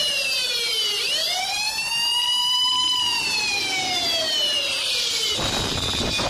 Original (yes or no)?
no